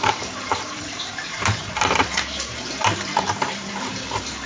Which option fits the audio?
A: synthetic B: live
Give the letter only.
A